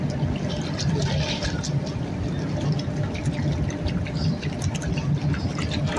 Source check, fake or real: real